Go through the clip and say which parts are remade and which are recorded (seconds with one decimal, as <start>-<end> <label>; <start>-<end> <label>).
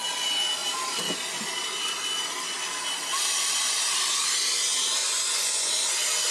0.0-5.0 recorded; 5.0-5.7 remade; 5.7-6.3 recorded